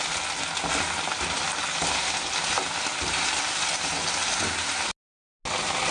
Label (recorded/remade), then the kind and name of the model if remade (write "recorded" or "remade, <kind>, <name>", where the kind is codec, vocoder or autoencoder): recorded